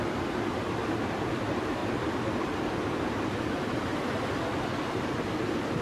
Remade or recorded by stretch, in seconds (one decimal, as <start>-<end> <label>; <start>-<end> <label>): 0.0-1.8 recorded; 1.8-3.8 remade; 3.8-4.7 recorded; 4.7-5.3 remade; 5.3-5.8 recorded